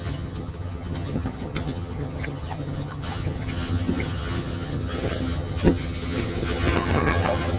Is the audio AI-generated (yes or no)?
yes